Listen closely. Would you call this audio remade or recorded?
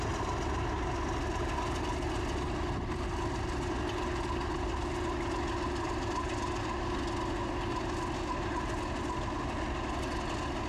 recorded